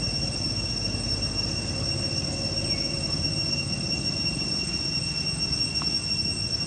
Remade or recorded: recorded